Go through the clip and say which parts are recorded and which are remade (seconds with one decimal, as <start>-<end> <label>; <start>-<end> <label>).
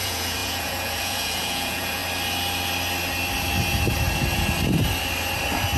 0.0-2.0 remade; 2.0-5.8 recorded